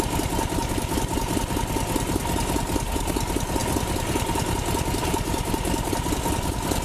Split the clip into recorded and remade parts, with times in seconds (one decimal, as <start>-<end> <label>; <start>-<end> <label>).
0.0-6.8 recorded